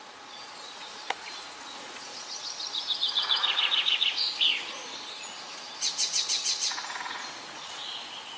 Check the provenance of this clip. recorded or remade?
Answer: remade